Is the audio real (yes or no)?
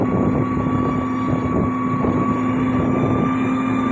yes